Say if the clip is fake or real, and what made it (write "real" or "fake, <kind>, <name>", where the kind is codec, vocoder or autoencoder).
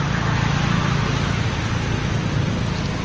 real